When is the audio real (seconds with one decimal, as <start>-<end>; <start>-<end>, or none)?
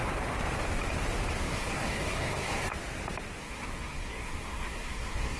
0.0-1.4; 2.7-3.4